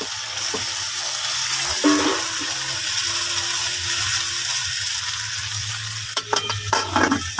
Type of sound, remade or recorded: recorded